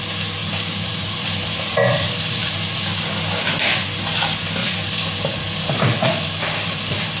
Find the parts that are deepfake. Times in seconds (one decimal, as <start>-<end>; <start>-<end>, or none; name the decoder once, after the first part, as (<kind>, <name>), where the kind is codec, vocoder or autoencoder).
0.4-0.9 (vocoder, BigVGAN v2); 4.6-7.2